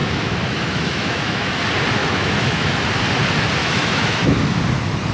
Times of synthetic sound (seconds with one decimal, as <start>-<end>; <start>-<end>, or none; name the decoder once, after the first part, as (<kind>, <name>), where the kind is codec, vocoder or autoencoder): 0.0-1.6 (autoencoder, DAC-VAE); 2.0-2.7; 3.6-4.6